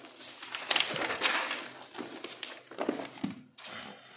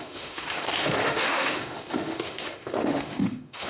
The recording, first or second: first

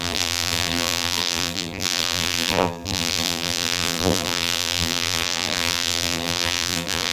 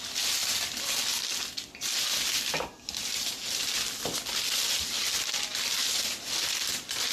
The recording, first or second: second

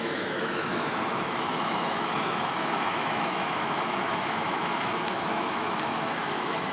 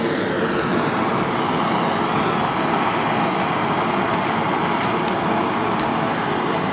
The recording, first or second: second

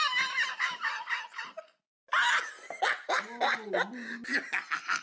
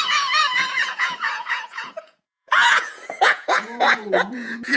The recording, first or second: first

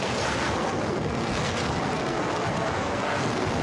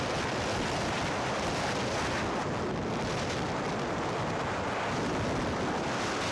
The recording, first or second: second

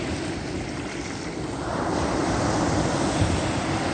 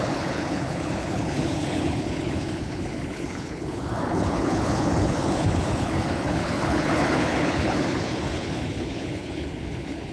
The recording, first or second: first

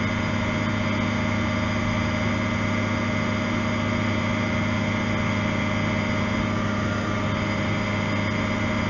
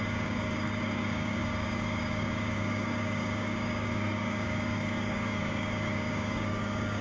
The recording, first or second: first